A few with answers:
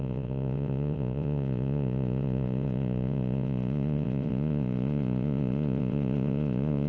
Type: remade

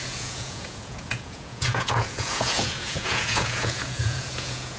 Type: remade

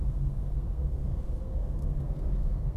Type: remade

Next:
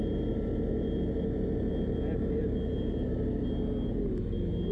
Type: recorded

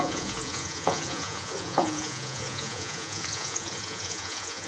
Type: remade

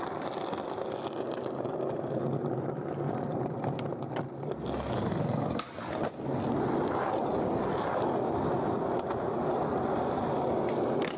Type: recorded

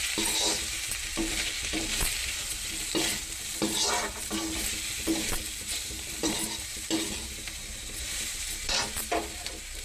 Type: remade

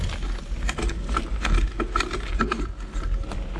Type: recorded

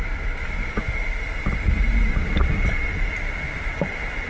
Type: remade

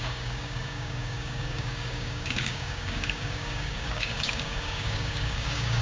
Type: remade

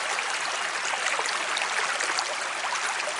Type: recorded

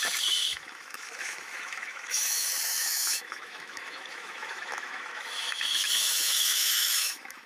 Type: remade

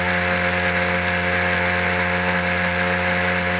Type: recorded